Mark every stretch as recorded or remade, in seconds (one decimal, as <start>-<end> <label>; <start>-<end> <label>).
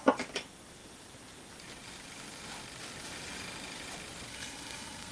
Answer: 0.0-4.3 recorded; 4.3-5.1 remade